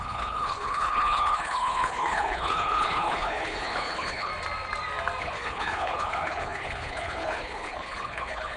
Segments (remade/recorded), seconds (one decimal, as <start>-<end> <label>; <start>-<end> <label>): 0.0-4.3 remade; 4.3-5.2 recorded; 5.2-8.6 remade